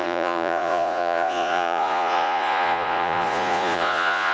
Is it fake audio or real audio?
fake